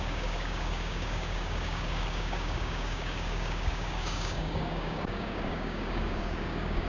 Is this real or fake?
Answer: fake